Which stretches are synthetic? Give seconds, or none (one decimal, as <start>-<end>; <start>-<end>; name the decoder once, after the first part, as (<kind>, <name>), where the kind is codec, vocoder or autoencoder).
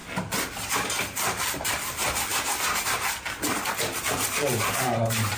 1.2-2.3 (vocoder, BigVGAN v2); 3.5-5.4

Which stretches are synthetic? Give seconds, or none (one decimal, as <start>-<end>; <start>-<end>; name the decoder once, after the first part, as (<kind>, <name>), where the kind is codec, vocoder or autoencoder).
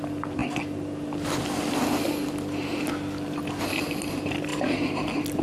none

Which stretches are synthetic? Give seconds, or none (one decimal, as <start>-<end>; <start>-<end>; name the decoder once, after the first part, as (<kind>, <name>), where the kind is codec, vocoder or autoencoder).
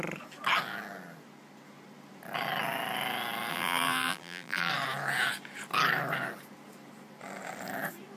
3.5-4.7 (vocoder, BigVGAN v2)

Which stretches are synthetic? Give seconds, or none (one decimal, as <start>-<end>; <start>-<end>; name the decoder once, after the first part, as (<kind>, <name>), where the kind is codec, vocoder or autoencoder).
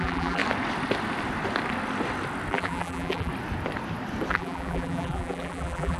0.0-0.4 (vocoder, BigVGAN v2); 2.5-3.3; 4.3-6.0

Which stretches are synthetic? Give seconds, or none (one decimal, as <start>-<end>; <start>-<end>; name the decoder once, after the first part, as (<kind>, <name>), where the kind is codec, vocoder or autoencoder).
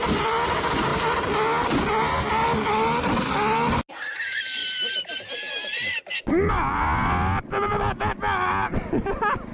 none